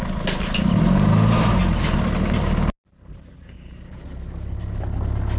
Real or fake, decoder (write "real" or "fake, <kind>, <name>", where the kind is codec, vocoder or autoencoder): real